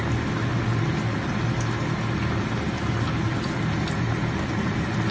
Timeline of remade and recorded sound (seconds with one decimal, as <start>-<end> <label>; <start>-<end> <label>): 0.0-5.1 recorded